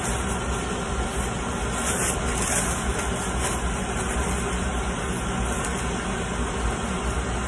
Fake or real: real